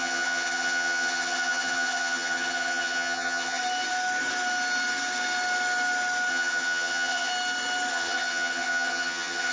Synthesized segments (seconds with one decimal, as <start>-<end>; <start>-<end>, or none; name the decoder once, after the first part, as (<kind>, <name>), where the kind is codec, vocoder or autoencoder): 0.0-3.6 (vocoder, HiFi-GAN); 6.3-7.3; 7.9-9.5